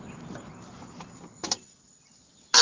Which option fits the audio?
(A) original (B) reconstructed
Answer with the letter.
A